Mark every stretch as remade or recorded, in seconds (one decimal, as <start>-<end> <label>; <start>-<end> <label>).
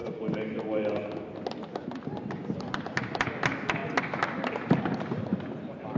0.0-6.0 recorded